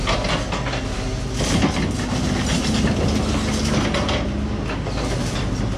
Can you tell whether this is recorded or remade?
recorded